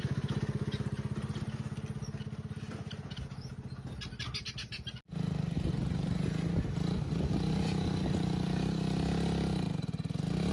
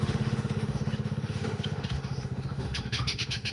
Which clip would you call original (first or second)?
first